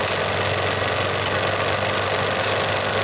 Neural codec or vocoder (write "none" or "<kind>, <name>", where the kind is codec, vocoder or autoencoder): none